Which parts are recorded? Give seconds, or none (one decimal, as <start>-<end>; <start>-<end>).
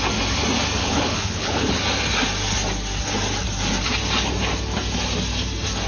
0.0-0.8; 1.8-5.9